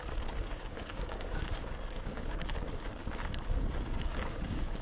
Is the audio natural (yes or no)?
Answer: no